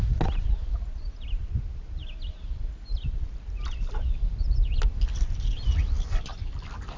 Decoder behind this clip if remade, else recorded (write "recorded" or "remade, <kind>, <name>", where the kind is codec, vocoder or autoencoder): recorded